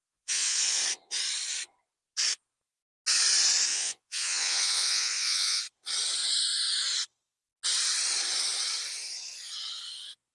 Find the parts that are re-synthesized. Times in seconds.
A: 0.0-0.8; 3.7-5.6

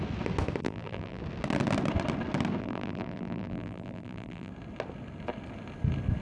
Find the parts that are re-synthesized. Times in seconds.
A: 0.6-1.2; 2.6-4.5